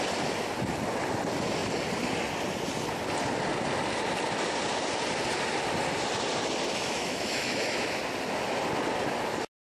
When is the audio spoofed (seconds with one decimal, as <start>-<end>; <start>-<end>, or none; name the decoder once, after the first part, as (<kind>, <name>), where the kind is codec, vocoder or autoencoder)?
6.7-8.0 (autoencoder, DAC-VAE)